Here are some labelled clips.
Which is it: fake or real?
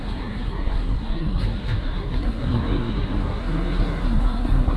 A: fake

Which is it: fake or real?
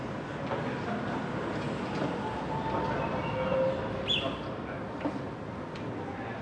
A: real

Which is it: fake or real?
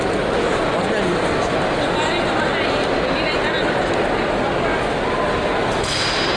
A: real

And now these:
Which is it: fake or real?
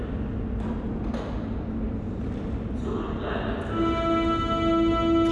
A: real